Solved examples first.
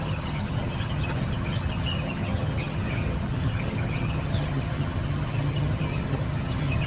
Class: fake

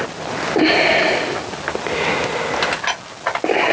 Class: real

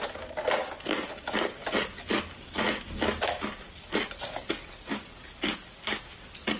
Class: real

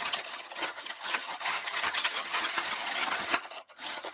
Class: fake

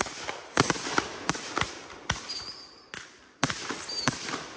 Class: real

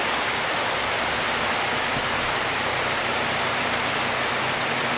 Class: real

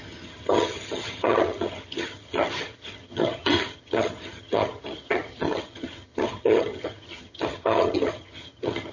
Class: fake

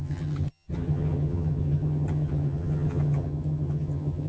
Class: fake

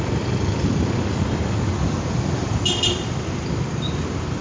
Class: real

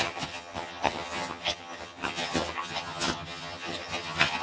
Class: fake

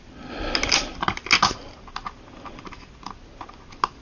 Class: real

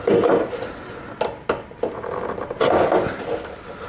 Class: real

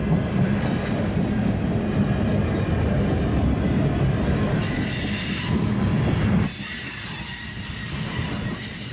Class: real